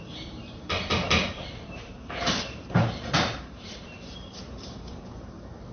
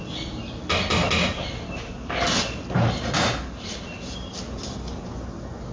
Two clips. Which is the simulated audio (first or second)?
first